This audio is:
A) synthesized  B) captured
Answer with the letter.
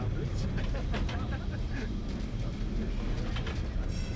B